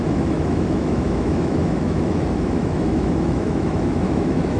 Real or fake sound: fake